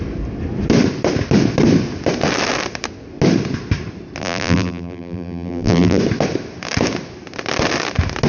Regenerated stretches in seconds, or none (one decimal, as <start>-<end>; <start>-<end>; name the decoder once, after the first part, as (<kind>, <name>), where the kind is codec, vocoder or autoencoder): 4.2-6.0 (vocoder, BigVGAN v2)